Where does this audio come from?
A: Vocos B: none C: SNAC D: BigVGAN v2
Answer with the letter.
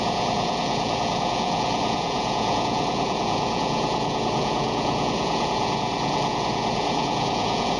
A